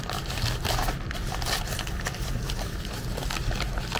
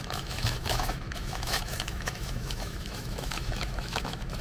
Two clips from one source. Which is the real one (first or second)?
first